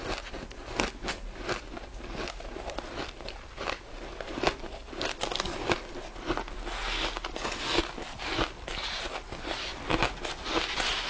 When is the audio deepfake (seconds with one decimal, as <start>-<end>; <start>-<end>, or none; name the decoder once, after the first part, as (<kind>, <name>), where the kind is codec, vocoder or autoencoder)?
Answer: none